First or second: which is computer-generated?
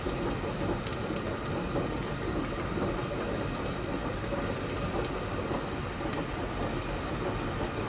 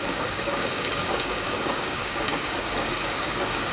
second